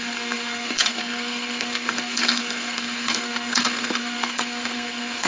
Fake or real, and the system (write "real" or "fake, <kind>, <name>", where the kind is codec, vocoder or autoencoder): fake, codec, SNAC